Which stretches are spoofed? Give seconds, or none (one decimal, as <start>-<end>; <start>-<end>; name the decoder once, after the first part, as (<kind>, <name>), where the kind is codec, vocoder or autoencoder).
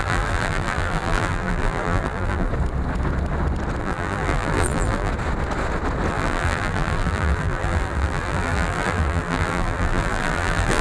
0.0-2.5 (vocoder, BigVGAN v2); 3.8-5.1; 6.1-10.8